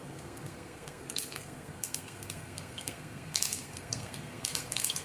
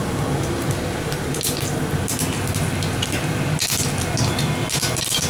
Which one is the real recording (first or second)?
second